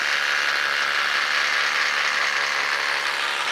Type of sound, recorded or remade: recorded